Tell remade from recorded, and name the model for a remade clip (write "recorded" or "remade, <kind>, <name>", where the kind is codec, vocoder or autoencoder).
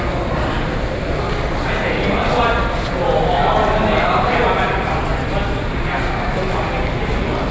recorded